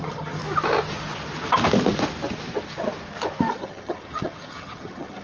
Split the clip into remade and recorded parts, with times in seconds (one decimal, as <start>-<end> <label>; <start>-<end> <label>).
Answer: 0.0-0.4 remade; 0.4-3.5 recorded; 3.5-5.2 remade